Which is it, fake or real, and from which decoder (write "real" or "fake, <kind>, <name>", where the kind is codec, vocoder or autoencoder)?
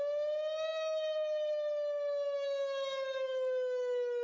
fake, autoencoder, DAC-VAE